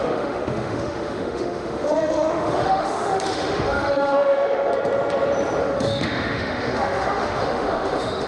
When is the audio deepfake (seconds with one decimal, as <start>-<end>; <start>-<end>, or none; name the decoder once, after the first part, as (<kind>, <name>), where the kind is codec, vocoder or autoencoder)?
0.0-4.7 (autoencoder, DAC-VAE); 5.6-8.3